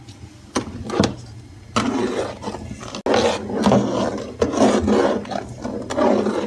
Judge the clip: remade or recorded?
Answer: recorded